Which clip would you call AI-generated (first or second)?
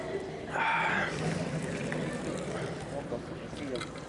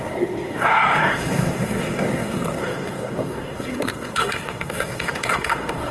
second